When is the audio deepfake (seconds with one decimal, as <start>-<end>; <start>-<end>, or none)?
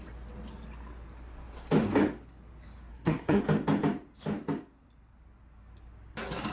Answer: 2.9-3.4